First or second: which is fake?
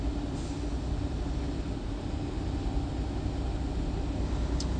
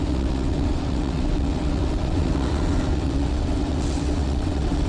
second